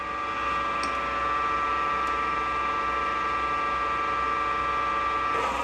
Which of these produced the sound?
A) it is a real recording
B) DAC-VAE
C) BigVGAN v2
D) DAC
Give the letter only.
A